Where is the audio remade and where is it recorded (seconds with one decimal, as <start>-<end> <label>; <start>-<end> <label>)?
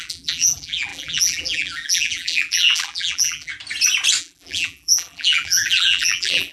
0.0-3.5 remade; 3.5-4.2 recorded; 4.2-6.5 remade